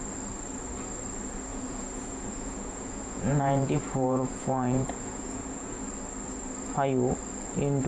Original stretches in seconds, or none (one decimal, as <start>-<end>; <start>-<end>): 0.0-1.5; 5.9-7.9